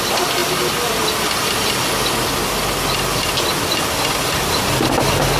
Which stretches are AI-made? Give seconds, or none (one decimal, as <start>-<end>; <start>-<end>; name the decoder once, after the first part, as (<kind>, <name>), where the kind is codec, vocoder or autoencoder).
none